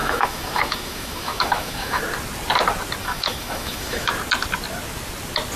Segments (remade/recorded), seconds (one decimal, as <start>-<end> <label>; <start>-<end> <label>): 0.0-2.0 remade; 2.0-3.0 recorded; 3.0-4.1 remade; 4.1-5.6 recorded